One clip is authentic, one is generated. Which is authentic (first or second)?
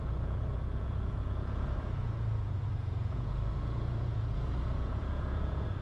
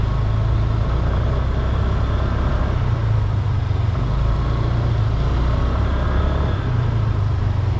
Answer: second